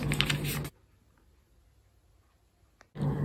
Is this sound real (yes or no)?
yes